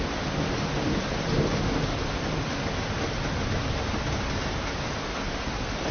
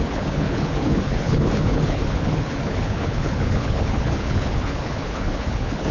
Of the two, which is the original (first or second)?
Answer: first